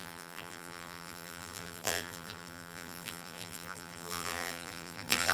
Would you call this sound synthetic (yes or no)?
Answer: yes